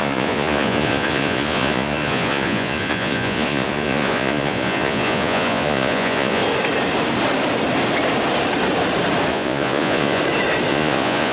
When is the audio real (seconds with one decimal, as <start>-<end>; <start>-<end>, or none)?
6.4-9.3; 10.2-10.7